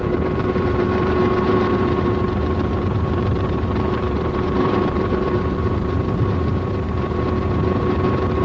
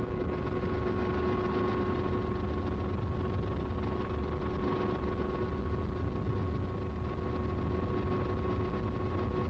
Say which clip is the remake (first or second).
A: first